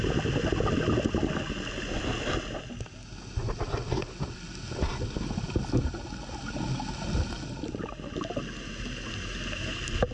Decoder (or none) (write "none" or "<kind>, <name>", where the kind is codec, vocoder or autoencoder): none